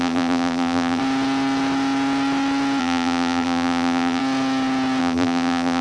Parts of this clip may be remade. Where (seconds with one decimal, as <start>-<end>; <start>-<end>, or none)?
0.0-1.0; 2.8-4.2; 5.0-5.8